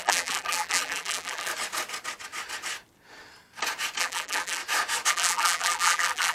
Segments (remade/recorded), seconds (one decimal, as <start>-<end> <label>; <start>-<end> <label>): 0.0-1.5 remade; 1.5-4.0 recorded; 4.0-4.6 remade; 4.6-5.1 recorded; 5.1-6.3 remade